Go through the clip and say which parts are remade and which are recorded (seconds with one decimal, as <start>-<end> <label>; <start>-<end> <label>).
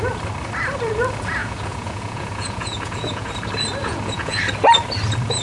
0.0-1.4 recorded; 1.4-3.3 remade; 3.3-3.8 recorded; 3.8-4.4 remade; 4.4-5.4 recorded